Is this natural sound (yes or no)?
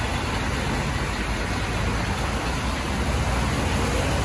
yes